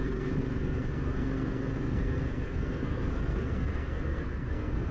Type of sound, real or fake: fake